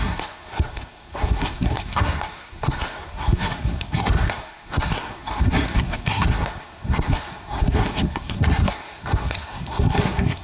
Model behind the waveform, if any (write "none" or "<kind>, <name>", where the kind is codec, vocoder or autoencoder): codec, SNAC